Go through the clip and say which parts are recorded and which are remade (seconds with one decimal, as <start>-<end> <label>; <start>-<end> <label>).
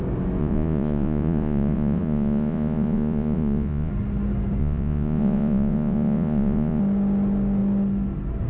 0.0-0.4 recorded; 0.4-3.9 remade; 3.9-4.6 recorded; 4.6-6.8 remade; 6.8-8.5 recorded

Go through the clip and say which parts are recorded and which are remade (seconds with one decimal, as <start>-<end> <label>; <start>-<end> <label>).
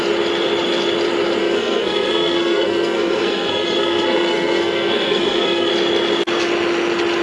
0.0-1.4 recorded; 1.4-5.7 remade; 5.7-7.2 recorded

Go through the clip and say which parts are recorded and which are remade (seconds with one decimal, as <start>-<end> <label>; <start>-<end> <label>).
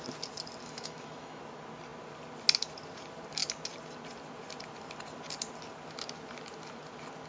0.0-0.6 recorded; 0.6-1.4 remade; 1.4-7.3 recorded